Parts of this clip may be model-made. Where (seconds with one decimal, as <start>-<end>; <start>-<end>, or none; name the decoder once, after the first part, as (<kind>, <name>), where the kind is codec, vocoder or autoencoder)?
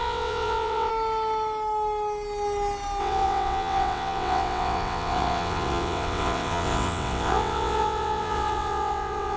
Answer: 0.0-0.9 (vocoder, WaveNeXt); 3.0-9.4